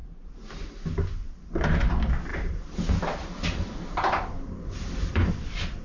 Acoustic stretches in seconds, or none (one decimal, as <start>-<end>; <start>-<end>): 0.6-2.3